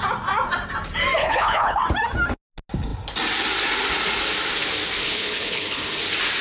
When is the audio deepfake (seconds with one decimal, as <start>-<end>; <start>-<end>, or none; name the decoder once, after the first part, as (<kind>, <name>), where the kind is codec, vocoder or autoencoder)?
1.2-1.8 (codec, HILCodec); 5.0-6.0